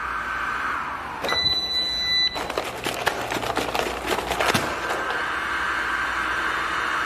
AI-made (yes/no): no